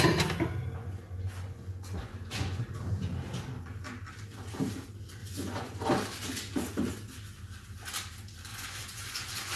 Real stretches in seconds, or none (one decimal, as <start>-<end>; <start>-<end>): 0.0-0.8; 2.7-5.2; 5.9-8.5